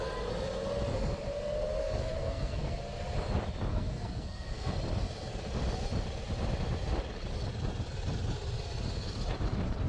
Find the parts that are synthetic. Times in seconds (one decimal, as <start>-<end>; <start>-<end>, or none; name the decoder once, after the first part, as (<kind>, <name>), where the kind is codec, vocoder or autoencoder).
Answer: 1.8-2.8 (codec, SNAC); 3.7-4.7